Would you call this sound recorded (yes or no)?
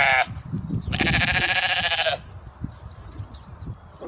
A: yes